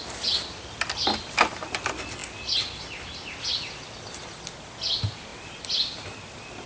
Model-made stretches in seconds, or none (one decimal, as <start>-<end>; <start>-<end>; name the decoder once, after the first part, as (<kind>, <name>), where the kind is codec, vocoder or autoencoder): none